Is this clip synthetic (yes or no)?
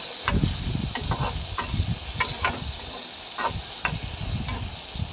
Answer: no